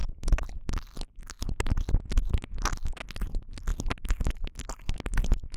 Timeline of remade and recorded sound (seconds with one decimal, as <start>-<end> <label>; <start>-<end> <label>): 0.0-5.6 recorded